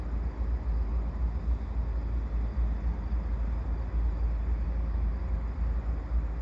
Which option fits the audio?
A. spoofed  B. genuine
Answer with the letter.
B